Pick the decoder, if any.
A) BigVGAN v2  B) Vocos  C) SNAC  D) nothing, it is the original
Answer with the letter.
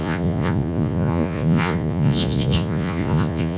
B